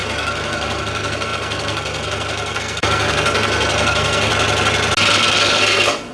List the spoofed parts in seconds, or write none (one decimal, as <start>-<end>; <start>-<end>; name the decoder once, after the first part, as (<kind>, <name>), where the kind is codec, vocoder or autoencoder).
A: 0.0-4.3 (codec, SNAC); 5.1-6.1